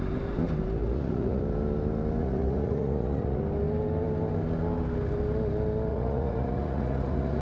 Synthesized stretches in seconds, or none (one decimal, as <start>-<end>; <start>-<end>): 0.8-1.4; 2.2-3.4; 5.9-7.4